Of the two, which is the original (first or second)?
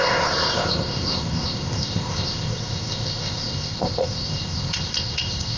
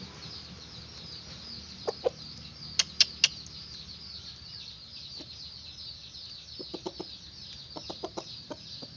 second